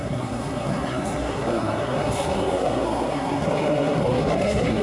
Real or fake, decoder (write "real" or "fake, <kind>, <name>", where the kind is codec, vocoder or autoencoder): fake, codec, SNAC